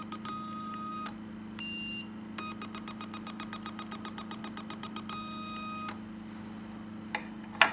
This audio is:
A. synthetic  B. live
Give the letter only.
B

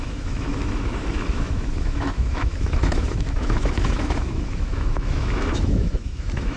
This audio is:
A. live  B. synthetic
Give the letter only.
B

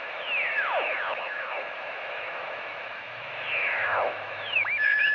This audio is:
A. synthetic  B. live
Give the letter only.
A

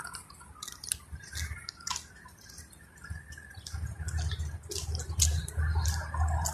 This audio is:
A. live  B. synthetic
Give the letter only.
A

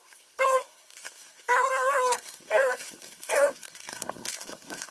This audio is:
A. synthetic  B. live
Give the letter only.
A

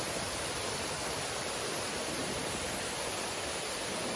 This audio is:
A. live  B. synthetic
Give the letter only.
B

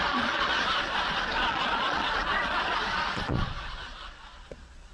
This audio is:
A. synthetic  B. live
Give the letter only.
A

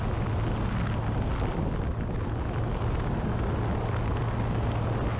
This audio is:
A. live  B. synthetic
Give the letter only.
A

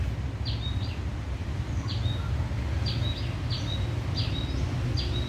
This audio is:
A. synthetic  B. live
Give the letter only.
B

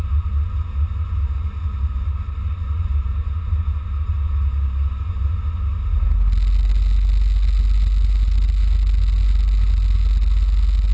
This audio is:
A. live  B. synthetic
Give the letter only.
A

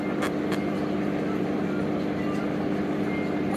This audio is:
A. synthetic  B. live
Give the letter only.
B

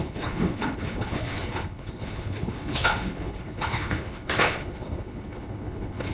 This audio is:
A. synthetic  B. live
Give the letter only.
A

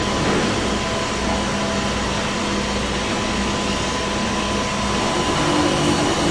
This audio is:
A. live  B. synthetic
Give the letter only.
A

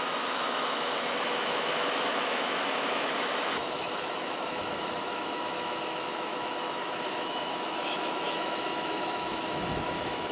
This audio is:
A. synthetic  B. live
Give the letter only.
A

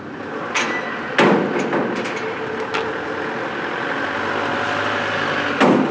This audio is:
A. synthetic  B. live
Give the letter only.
B